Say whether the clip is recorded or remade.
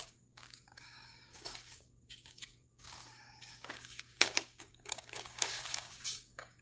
remade